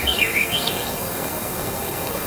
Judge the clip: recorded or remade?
remade